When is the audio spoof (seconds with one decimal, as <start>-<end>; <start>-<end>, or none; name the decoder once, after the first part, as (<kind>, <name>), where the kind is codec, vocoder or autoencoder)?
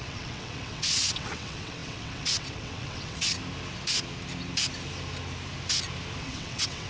0.0-3.4 (vocoder, WaveNeXt); 6.2-6.9